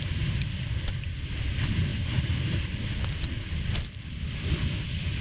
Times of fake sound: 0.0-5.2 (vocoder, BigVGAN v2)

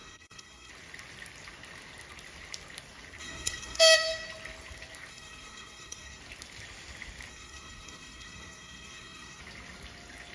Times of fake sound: 0.0-0.7 (codec, SNAC); 3.2-3.8; 5.1-6.2; 7.3-9.4

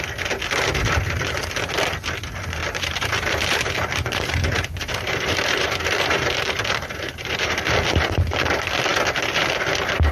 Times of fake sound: 2.6-7.6 (vocoder, BigVGAN v2)

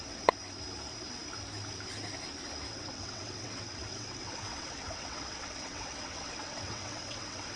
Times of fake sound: 0.0-0.4 (vocoder, WaveNeXt); 2.7-7.6

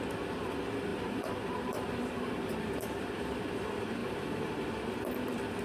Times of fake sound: 0.9-2.5 (vocoder, BigVGAN v2); 4.0-4.7

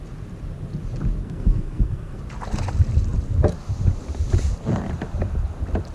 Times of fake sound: 1.2-2.2 (codec, SNAC)

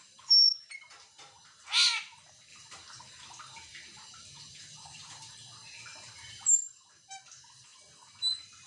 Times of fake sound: 2.5-6.5 (vocoder, BigVGAN v2)